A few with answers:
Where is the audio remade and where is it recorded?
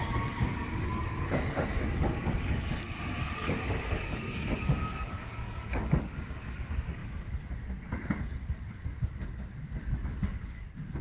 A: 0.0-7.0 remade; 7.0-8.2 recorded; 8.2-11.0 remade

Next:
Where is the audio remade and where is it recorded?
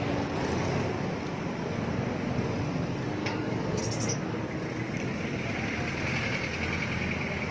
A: 0.0-3.2 recorded; 3.2-3.8 remade; 3.8-7.5 recorded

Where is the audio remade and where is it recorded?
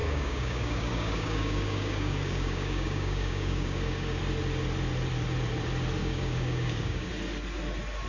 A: 0.0-4.2 remade; 4.2-6.0 recorded; 6.0-7.1 remade; 7.1-8.1 recorded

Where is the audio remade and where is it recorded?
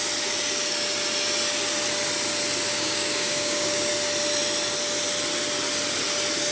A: 0.0-2.7 recorded; 2.7-3.9 remade; 3.9-6.5 recorded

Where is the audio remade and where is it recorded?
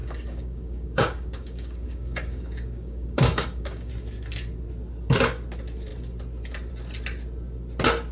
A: 0.0-3.9 remade; 3.9-8.1 recorded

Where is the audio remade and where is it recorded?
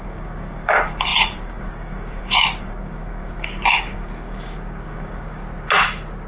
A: 0.0-5.4 remade; 5.4-6.3 recorded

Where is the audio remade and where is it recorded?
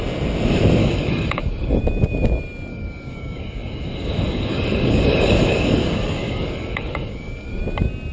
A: 0.0-0.8 recorded; 0.8-1.8 remade; 1.8-2.7 recorded; 2.7-7.6 remade; 7.6-8.1 recorded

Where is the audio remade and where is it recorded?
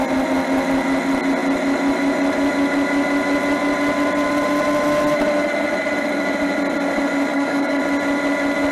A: 0.0-7.3 recorded; 7.3-7.8 remade; 7.8-8.7 recorded